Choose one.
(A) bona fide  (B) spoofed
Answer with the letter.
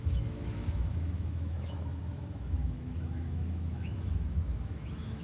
B